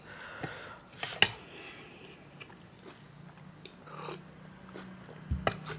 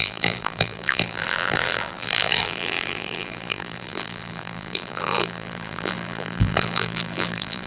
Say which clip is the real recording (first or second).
first